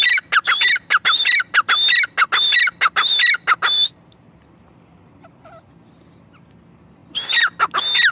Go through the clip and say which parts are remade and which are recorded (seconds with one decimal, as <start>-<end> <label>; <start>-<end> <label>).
0.0-1.3 remade; 1.3-8.1 recorded